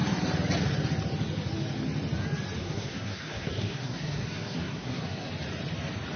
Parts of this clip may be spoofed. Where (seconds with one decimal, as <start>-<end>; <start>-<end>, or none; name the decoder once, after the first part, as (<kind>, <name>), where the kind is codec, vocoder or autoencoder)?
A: 2.6-5.3 (codec, SNAC)